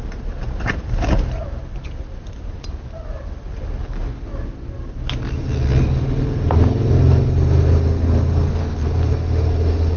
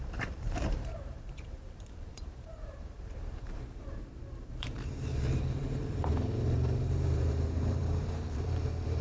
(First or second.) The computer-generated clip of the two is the second